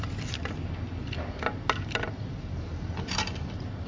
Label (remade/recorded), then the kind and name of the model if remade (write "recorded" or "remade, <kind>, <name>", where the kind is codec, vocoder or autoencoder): recorded